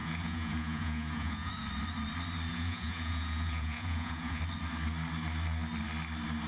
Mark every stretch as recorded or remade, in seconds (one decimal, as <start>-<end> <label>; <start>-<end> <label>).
0.0-1.5 remade; 1.5-2.5 recorded; 2.5-4.4 remade; 4.4-6.5 recorded